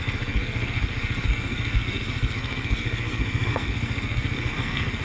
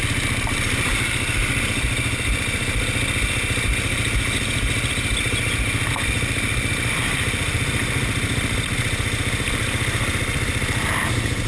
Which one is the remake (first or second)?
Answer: first